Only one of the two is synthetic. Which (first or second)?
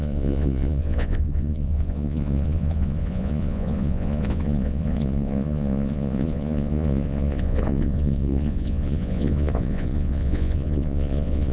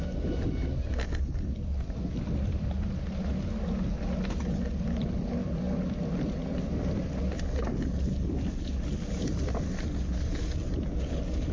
first